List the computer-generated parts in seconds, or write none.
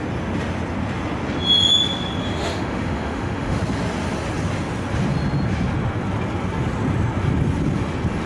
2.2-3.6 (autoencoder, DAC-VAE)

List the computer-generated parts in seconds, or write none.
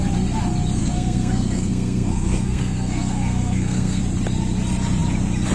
0.8-4.0 (codec, SNAC)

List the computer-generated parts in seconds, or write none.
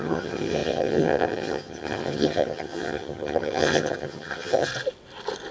0.0-4.7 (vocoder, HiFi-GAN)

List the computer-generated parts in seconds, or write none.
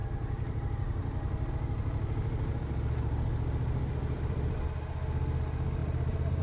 4.0-4.6 (vocoder, BigVGAN v2); 5.8-6.4